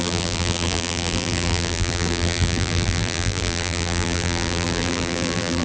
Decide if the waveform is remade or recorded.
remade